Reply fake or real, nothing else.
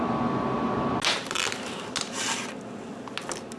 real